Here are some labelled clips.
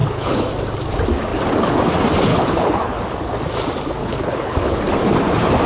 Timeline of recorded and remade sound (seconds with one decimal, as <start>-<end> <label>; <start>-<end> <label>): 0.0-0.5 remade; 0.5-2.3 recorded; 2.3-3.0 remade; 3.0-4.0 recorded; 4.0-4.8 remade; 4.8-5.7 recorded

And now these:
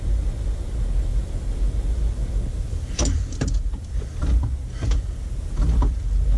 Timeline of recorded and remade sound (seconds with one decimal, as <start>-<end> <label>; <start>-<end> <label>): 0.0-1.1 recorded; 1.1-4.4 remade; 4.4-6.4 recorded

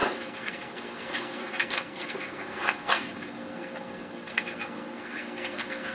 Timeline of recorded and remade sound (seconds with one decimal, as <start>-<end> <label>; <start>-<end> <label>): 0.0-5.9 remade

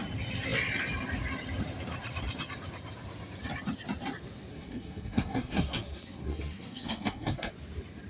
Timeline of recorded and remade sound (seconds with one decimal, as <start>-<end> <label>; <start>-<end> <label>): 0.0-4.5 recorded; 4.5-7.5 remade; 7.5-8.1 recorded

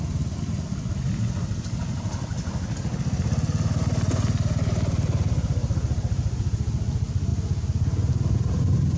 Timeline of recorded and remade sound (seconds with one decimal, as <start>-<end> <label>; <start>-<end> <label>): 0.0-9.0 recorded